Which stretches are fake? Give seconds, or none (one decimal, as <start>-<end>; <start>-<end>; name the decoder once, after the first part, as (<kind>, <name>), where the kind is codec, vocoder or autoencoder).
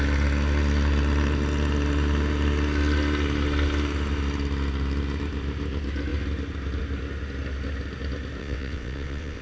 8.4-9.4 (vocoder, WaveNeXt)